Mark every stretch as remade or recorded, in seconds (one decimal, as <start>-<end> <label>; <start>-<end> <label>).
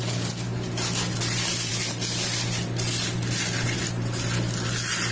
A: 0.0-5.1 recorded